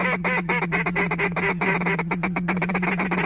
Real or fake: real